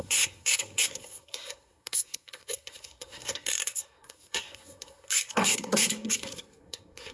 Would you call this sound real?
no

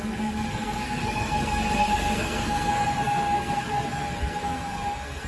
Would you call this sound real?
no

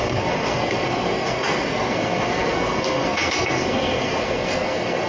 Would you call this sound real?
no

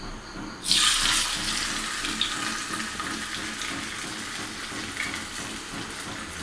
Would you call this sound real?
yes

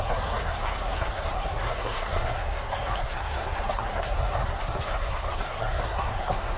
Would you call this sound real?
no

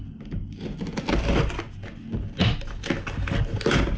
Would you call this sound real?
yes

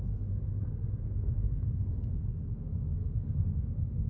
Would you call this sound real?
no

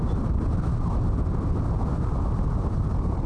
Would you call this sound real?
yes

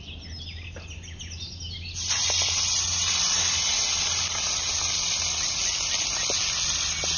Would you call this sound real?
yes